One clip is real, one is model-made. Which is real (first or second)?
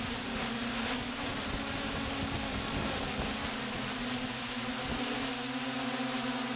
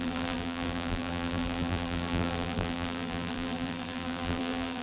first